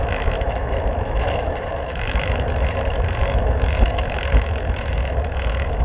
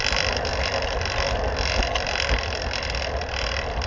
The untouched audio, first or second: second